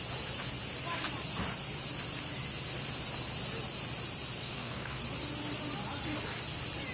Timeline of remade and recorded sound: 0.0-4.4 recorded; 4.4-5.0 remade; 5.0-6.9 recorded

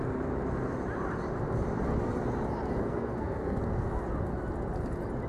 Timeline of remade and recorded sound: 0.0-2.8 recorded; 2.8-3.6 remade; 3.6-5.3 recorded

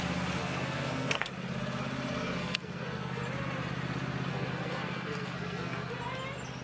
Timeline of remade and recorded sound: 0.0-0.4 recorded; 0.4-1.3 remade; 1.3-2.4 recorded; 2.4-3.2 remade; 3.2-4.3 recorded; 4.3-5.9 remade; 5.9-6.6 recorded

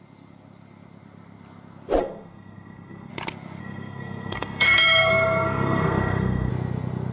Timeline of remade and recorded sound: 0.0-2.0 recorded; 2.0-3.1 remade; 3.1-3.6 recorded; 3.6-6.5 remade; 6.5-7.1 recorded

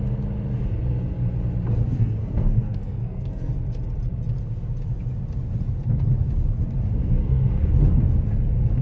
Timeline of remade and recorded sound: 0.0-2.0 recorded; 2.0-3.5 remade; 3.5-7.0 recorded; 7.0-7.7 remade; 7.7-8.8 recorded

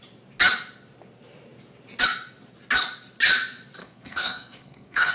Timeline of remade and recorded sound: 0.0-3.8 recorded; 3.8-5.1 remade